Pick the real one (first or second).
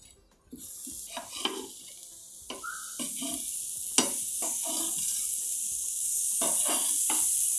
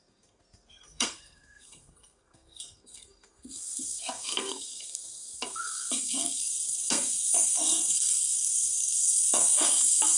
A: first